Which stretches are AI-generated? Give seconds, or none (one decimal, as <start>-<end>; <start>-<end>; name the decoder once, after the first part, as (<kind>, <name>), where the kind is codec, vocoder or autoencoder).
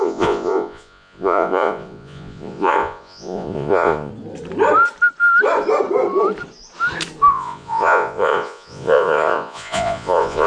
0.0-4.1 (vocoder, Vocos); 7.3-10.5